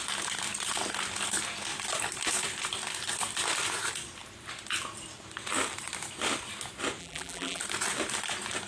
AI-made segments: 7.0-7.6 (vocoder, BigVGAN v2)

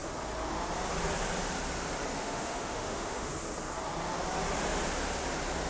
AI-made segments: 2.2-3.3 (autoencoder, DAC-VAE)